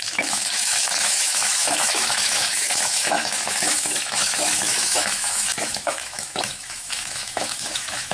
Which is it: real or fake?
fake